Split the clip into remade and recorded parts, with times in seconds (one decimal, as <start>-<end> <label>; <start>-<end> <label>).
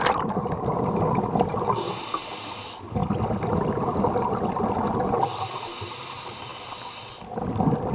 0.0-7.9 recorded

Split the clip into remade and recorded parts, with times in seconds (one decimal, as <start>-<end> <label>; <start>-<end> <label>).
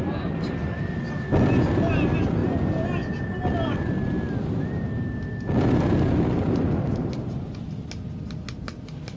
0.0-9.2 recorded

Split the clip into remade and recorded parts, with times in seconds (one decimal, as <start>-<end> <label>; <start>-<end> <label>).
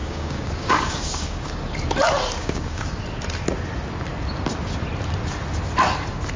0.0-1.5 remade; 1.5-2.4 recorded; 2.4-2.9 remade; 2.9-6.4 recorded